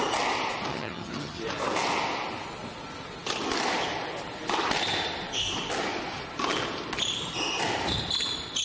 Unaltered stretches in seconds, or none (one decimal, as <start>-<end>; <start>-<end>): 0.0-0.7; 1.4-8.6

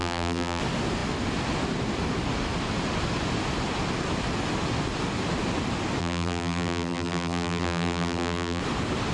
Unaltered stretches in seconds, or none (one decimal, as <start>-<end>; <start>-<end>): 0.6-6.0; 8.6-9.1

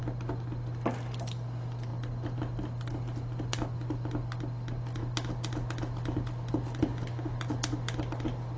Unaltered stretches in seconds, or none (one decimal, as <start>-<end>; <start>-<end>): 0.0-8.6

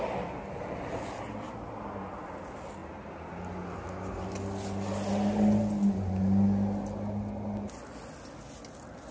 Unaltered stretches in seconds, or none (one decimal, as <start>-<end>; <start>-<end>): 0.0-9.1